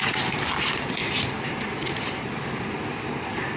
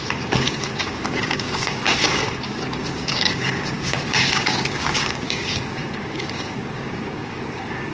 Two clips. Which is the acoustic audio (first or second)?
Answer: first